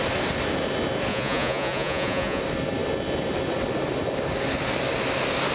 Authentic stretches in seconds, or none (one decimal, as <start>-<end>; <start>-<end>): 0.0-1.1; 2.4-5.5